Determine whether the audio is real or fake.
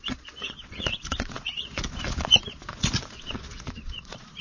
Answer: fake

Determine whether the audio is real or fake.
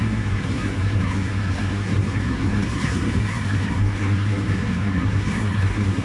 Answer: fake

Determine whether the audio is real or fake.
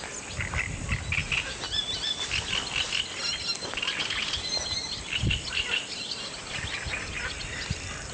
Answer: real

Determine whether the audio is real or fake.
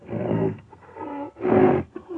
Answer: fake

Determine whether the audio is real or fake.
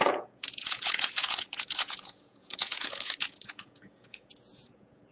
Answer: fake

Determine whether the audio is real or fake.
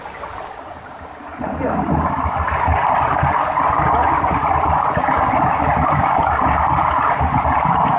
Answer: real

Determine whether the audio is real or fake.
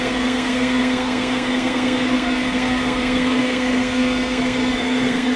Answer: fake